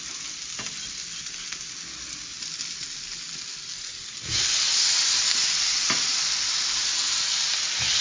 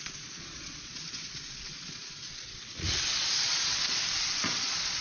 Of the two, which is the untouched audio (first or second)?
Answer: first